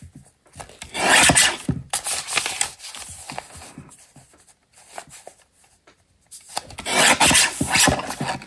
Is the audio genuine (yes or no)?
yes